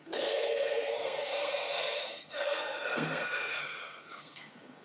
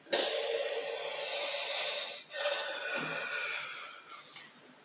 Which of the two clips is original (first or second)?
second